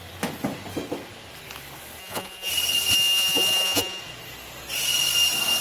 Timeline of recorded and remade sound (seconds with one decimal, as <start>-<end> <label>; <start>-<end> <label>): 0.0-2.0 recorded; 2.0-2.5 remade; 2.5-2.9 recorded; 2.9-4.0 remade; 4.0-5.6 recorded